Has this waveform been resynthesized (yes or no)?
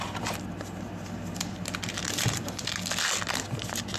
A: no